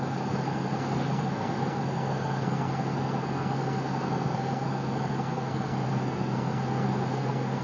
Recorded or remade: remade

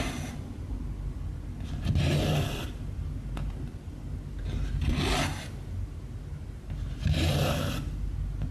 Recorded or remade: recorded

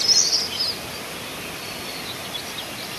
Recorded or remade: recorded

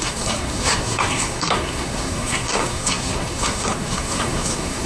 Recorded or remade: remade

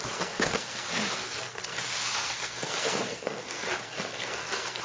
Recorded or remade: remade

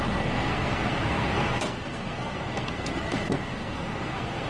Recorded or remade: remade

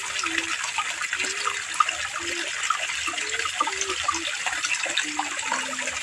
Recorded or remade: recorded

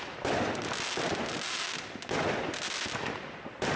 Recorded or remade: recorded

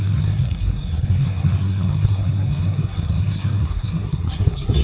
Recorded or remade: remade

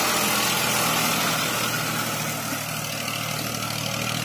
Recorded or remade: recorded